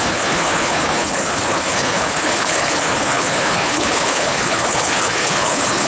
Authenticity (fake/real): fake